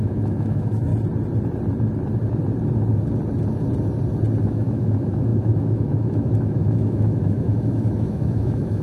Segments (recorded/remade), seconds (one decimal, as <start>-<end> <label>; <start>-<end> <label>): 0.0-0.9 remade; 0.9-4.4 recorded; 4.4-8.8 remade